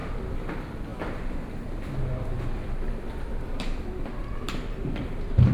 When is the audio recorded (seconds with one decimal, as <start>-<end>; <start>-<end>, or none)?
0.0-5.5